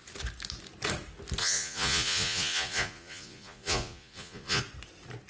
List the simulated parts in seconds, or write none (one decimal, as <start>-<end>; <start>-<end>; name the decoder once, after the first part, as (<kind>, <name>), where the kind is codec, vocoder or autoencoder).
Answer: 1.4-4.6 (vocoder, Vocos)